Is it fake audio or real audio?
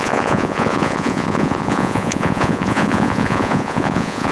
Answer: fake